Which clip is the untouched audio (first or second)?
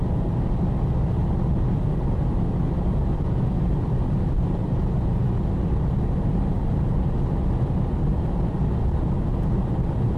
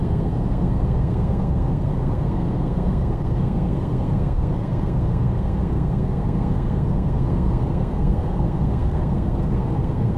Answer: first